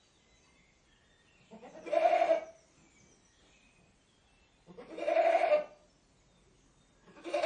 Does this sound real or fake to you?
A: real